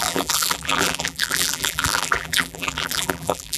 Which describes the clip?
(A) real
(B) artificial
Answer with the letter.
B